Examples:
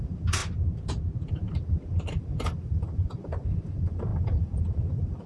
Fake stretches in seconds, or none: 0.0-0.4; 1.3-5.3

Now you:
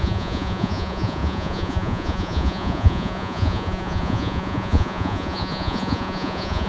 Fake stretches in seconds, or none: 0.0-6.7

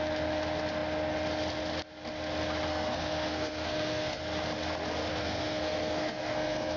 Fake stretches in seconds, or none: 2.7-4.2; 5.1-6.8